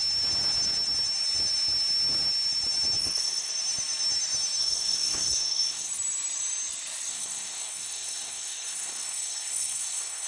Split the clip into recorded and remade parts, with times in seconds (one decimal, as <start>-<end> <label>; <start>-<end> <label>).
0.0-3.0 recorded; 3.0-3.5 remade; 3.5-4.6 recorded; 4.6-5.9 remade; 5.9-7.1 recorded; 7.1-10.3 remade